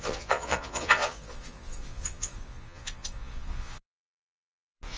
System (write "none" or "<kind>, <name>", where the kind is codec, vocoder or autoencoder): vocoder, Vocos